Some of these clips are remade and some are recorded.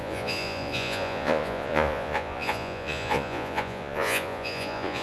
remade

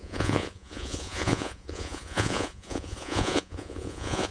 remade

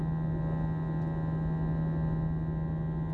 recorded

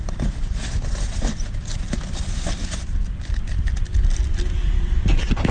recorded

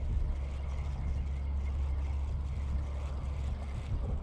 recorded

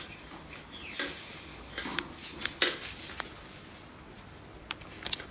recorded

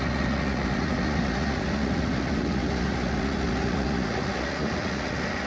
remade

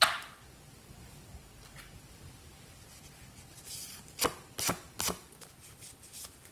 recorded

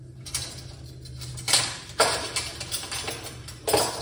recorded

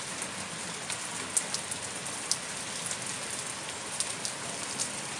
recorded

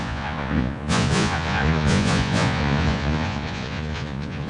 remade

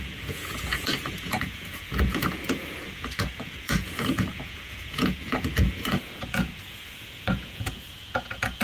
remade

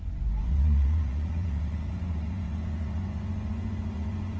remade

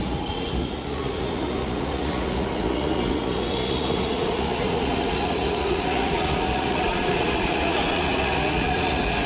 remade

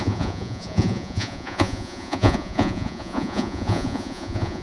remade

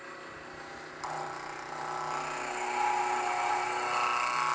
recorded